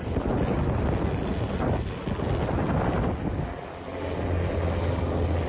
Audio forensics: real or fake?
real